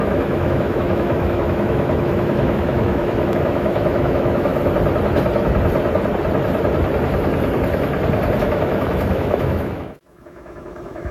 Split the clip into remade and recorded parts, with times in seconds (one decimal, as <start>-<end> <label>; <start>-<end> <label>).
0.0-4.5 remade; 4.5-8.4 recorded; 8.4-11.1 remade